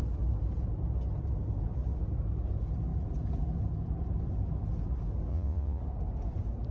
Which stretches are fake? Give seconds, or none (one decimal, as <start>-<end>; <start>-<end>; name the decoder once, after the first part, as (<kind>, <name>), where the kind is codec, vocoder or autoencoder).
5.3-5.8 (vocoder, Vocos)